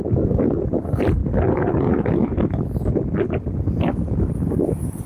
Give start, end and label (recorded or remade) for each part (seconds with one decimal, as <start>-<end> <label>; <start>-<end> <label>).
0.0-5.1 remade